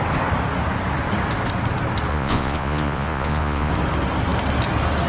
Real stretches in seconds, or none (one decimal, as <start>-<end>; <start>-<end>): 0.0-2.1; 3.7-5.1